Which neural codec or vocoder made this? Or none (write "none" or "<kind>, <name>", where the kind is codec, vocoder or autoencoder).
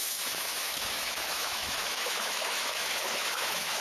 autoencoder, DAC-VAE